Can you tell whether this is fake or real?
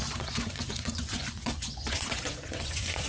fake